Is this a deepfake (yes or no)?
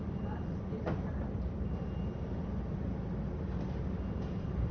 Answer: no